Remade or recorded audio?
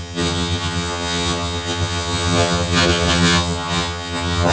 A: remade